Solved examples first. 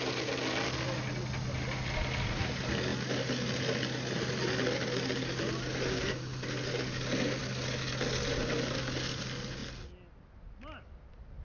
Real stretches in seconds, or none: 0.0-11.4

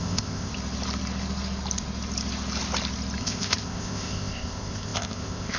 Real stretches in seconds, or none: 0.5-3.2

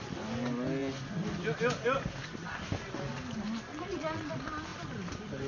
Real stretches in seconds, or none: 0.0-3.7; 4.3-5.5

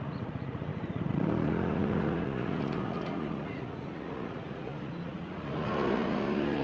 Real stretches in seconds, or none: none

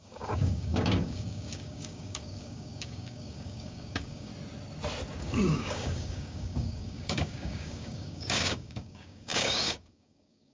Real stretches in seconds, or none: 4.3-5.2